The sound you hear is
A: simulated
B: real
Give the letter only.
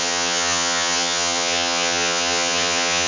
A